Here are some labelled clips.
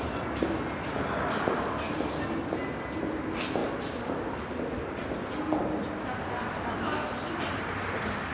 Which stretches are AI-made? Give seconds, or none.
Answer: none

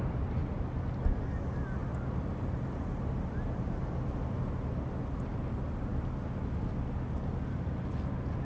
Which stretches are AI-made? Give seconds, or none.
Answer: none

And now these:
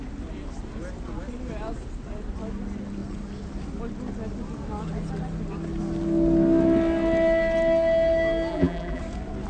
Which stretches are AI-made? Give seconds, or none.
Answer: 8.5-9.0 (vocoder, BigVGAN v2)

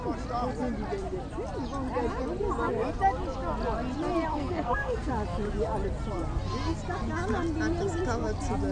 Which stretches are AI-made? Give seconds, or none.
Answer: 4.3-5.1 (codec, SNAC)